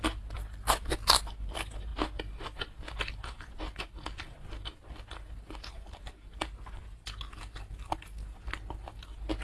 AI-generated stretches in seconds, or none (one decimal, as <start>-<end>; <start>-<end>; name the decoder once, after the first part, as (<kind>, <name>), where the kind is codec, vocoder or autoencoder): none